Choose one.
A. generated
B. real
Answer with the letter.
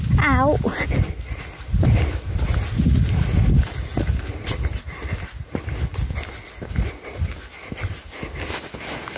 B